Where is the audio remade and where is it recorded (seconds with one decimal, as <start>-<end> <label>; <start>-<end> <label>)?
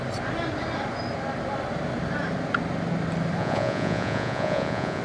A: 0.0-3.4 recorded; 3.4-5.0 remade